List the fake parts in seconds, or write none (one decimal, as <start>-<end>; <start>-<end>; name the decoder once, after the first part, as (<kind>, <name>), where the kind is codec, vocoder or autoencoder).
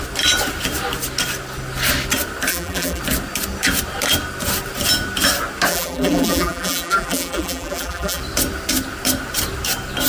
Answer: 2.5-3.0 (vocoder, BigVGAN v2); 5.7-8.2